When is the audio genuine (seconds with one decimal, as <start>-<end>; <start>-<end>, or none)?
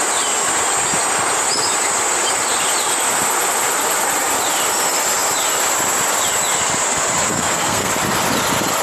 0.0-7.3; 7.9-8.8